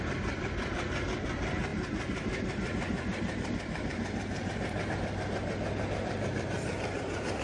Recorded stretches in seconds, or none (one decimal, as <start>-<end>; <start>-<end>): none